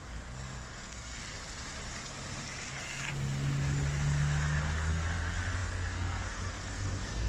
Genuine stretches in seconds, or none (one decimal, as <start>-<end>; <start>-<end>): 1.2-2.7; 3.1-4.9